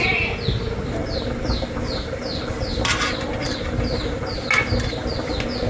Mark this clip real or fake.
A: real